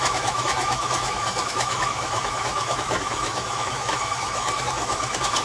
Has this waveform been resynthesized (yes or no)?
yes